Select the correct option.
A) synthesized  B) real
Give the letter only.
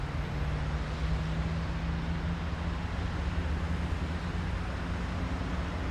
B